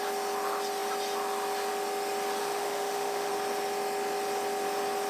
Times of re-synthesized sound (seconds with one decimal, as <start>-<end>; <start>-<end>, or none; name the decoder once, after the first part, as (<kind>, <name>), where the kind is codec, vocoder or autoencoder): 2.4-3.3 (autoencoder, DAC-VAE)